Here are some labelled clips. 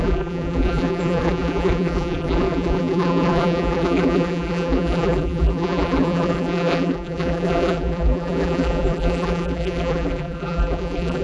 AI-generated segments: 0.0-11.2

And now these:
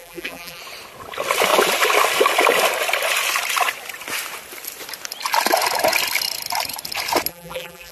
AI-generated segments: 0.0-0.6; 7.3-7.9